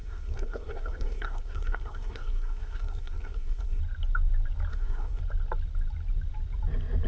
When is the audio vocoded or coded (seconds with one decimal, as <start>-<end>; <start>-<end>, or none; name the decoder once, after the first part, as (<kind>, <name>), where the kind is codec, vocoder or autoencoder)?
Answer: 0.0-3.8 (codec, SNAC); 4.7-5.2